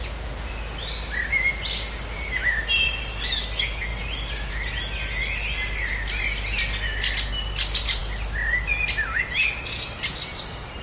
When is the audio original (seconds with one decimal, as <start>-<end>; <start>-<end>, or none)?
0.0-10.8